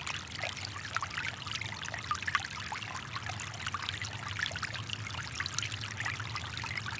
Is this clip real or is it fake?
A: real